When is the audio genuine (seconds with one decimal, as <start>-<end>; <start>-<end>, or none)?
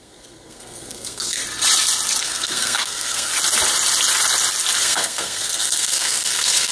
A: 1.4-2.2; 3.3-4.8